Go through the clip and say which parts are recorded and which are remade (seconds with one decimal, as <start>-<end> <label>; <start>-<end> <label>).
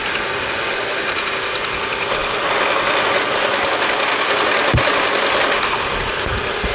0.0-6.7 recorded